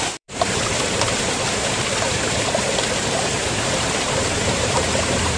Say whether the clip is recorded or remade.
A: remade